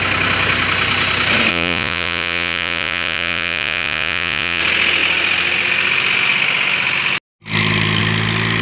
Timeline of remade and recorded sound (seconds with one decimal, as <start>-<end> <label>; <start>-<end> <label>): 0.0-1.5 recorded; 1.5-4.6 remade; 4.6-8.6 recorded